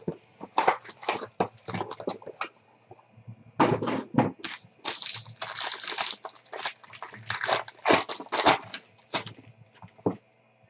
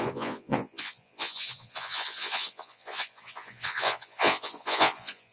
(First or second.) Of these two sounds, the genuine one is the first